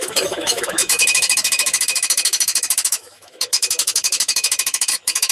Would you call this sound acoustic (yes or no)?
no